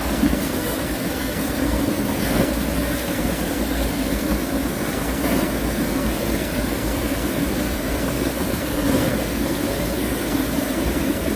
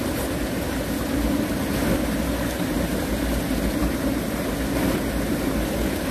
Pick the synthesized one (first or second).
first